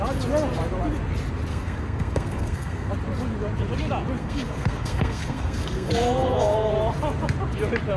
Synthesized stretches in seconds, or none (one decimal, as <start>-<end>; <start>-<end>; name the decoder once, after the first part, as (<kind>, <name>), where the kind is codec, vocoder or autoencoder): 1.5-2.9 (codec, SNAC); 4.2-6.7